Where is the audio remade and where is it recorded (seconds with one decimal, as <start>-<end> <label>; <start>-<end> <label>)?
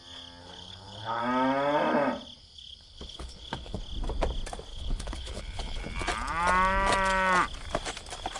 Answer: 0.0-0.4 recorded; 0.4-1.2 remade; 1.2-2.4 recorded; 2.4-3.8 remade; 3.8-4.7 recorded; 4.7-5.8 remade; 5.8-8.4 recorded